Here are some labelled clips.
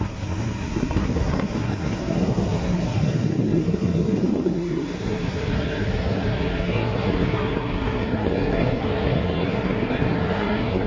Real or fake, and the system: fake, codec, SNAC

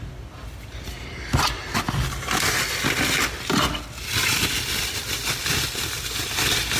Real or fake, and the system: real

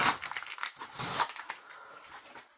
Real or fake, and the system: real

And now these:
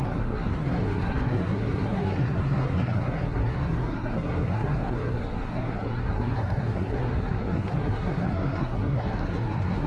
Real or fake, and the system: fake, codec, SNAC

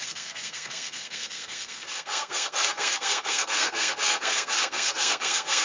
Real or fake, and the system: fake, codec, SNAC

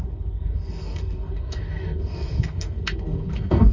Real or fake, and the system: fake, codec, SNAC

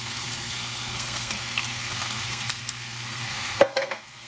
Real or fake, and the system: fake, codec, SNAC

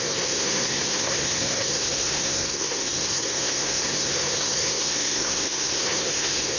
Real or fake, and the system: fake, codec, SNAC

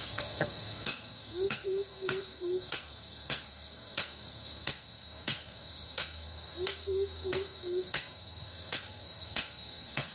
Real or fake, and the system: fake, codec, SNAC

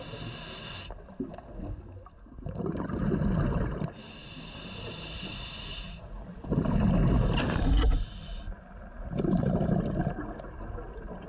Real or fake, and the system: real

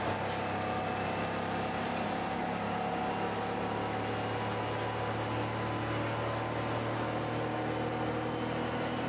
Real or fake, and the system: real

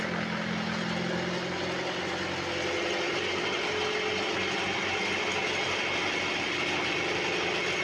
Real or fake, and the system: real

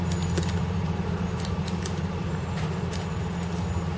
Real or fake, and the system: real